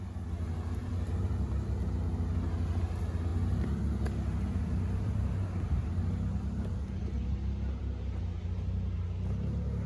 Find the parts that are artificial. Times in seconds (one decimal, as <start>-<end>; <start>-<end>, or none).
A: 0.8-1.7